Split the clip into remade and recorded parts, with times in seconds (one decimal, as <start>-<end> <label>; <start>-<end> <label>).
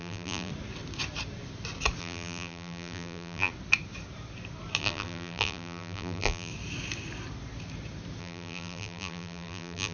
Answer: 0.0-0.5 remade; 0.5-2.0 recorded; 2.0-3.5 remade; 3.5-4.8 recorded; 4.8-6.5 remade; 6.5-8.2 recorded; 8.2-9.9 remade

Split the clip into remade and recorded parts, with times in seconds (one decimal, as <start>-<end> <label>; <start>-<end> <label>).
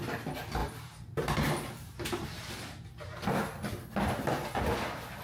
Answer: 0.0-0.6 recorded; 0.6-3.3 remade; 3.3-5.2 recorded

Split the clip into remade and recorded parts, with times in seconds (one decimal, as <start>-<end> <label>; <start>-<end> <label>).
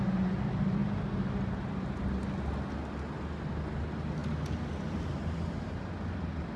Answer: 0.0-6.6 recorded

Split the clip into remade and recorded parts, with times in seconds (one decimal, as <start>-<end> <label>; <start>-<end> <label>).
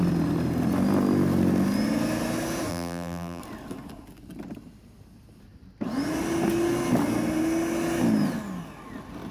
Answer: 0.0-2.7 recorded; 2.7-3.4 remade; 3.4-9.3 recorded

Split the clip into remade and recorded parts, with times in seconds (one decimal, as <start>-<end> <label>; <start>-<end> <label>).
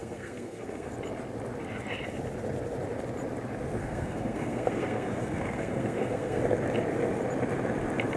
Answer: 0.0-0.9 remade; 0.9-3.8 recorded; 3.8-6.4 remade; 6.4-8.2 recorded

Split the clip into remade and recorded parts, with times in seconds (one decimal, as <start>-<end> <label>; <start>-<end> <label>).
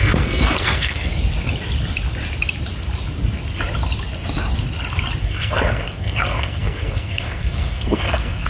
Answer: 0.0-1.1 remade; 1.1-5.2 recorded; 5.2-8.5 remade